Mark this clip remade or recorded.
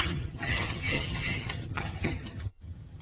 remade